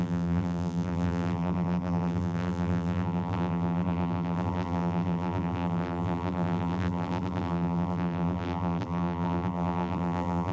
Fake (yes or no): yes